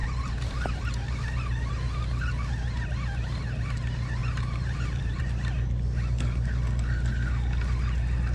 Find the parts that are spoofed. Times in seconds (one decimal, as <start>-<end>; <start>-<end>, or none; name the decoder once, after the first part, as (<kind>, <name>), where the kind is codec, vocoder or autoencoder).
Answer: 0.0-1.7 (vocoder, BigVGAN v2); 4.2-5.2